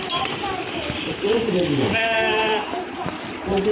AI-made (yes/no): yes